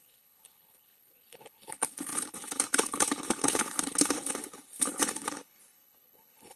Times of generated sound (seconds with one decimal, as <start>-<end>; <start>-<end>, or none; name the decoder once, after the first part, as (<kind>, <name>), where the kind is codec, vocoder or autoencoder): 0.0-6.6 (codec, HILCodec)